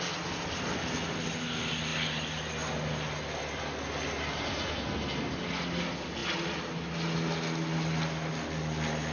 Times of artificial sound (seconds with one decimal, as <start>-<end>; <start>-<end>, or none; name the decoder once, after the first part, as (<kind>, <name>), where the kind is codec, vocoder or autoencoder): none